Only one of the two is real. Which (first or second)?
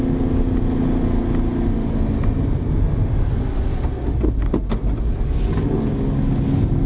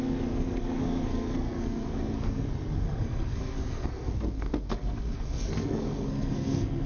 first